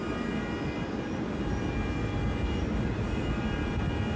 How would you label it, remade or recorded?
recorded